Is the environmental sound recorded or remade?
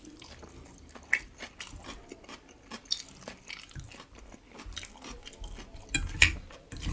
recorded